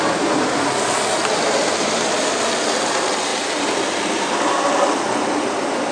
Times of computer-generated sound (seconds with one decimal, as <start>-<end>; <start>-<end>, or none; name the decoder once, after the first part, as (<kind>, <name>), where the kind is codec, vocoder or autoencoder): 1.2-2.2 (vocoder, BigVGAN v2); 3.3-4.3